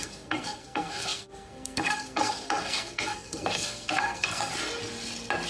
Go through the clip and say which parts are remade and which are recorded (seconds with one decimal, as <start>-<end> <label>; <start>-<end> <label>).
0.0-4.5 remade; 4.5-5.5 recorded